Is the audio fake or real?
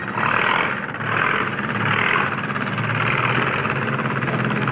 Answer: real